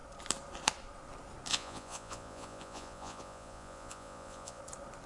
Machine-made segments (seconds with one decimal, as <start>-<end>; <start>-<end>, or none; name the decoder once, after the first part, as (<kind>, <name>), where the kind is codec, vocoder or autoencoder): 1.5-4.6 (vocoder, Vocos)